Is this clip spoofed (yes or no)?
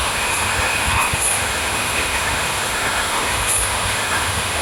yes